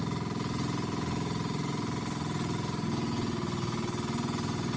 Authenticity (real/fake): real